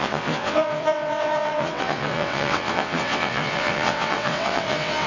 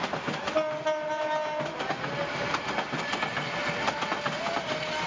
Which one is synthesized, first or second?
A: first